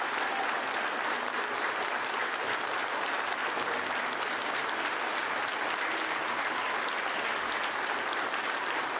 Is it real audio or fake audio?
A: real